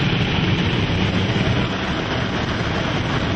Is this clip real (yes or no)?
yes